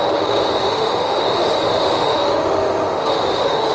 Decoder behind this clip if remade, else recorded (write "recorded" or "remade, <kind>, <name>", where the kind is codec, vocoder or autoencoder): remade, autoencoder, DAC-VAE